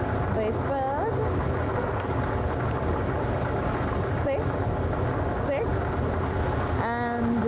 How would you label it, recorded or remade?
recorded